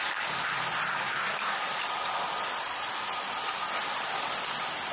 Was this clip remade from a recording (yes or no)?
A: no